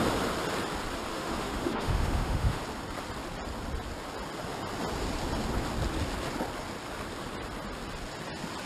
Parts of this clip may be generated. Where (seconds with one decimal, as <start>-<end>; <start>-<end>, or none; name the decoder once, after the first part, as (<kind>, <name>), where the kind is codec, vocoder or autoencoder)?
1.1-2.6 (autoencoder, DAC-VAE)